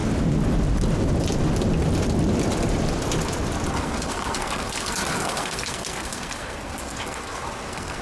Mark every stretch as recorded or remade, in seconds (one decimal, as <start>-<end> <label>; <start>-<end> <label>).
0.0-3.7 recorded; 3.7-8.0 remade